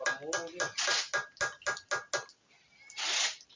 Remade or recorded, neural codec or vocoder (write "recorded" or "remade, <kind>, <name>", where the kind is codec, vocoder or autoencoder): recorded